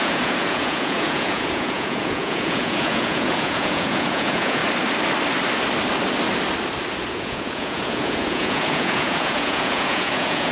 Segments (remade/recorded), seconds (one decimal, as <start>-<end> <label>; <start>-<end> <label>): 0.0-4.6 remade; 4.6-7.1 recorded; 7.1-10.5 remade